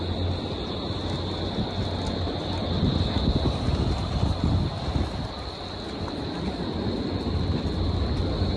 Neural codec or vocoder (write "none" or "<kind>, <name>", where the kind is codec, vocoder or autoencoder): none